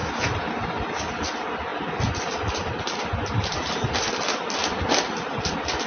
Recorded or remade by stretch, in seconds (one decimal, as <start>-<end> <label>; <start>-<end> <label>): 0.0-5.9 recorded